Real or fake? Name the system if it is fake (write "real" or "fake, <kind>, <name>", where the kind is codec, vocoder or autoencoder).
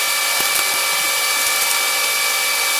real